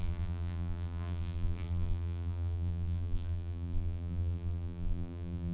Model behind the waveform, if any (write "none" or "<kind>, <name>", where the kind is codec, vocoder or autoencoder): vocoder, BigVGAN v2